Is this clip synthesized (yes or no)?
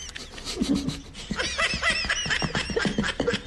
no